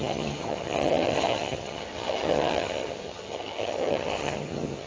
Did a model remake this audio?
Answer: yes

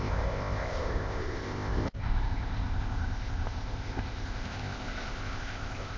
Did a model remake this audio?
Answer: yes